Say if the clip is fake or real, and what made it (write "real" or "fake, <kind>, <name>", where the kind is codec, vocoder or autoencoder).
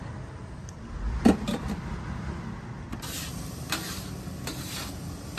real